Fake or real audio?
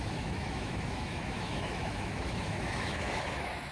fake